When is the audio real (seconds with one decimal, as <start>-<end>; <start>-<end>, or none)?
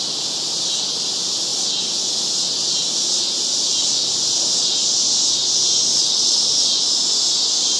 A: 0.0-5.9; 6.4-7.8